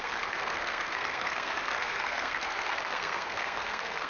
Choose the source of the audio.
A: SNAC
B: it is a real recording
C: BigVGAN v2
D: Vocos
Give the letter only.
A